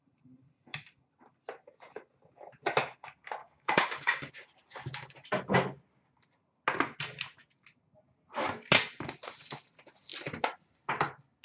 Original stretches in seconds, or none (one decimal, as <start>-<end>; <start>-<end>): 0.0-3.4; 4.3-11.4